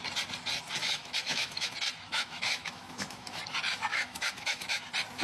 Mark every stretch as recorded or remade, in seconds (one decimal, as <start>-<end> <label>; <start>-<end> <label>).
0.0-0.8 recorded; 0.8-1.7 remade; 1.7-2.1 recorded; 2.1-3.4 remade; 3.4-3.9 recorded; 3.9-4.8 remade; 4.8-5.2 recorded